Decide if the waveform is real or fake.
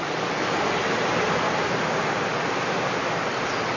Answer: real